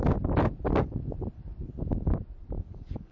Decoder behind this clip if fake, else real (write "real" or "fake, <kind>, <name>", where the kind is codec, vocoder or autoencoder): real